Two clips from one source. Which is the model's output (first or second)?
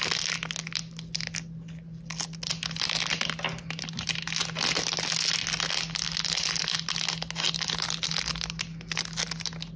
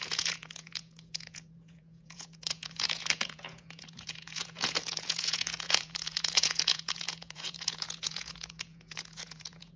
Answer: second